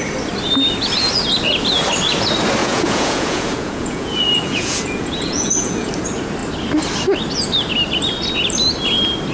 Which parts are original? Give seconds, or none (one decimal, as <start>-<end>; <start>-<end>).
0.0-2.6; 5.9-9.3